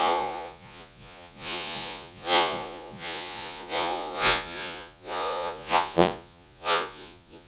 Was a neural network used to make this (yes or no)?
yes